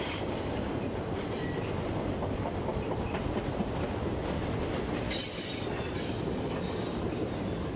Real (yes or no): yes